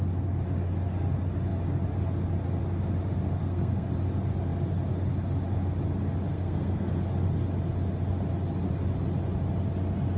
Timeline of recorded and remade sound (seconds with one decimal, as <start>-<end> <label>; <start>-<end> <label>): 0.0-3.4 recorded; 3.4-3.9 remade; 3.9-6.3 recorded; 6.3-6.9 remade; 6.9-10.2 recorded